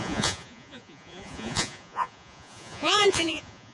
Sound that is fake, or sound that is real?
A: fake